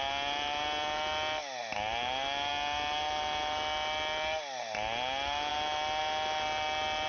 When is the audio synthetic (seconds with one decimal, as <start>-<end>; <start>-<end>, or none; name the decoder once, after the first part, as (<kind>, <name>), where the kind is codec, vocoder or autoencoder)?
none